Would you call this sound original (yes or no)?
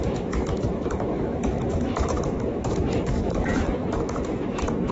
no